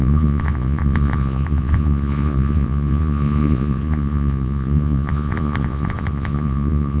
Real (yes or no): no